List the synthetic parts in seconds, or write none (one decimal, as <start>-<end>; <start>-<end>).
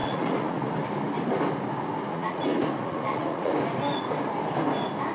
0.0-0.8; 2.1-3.5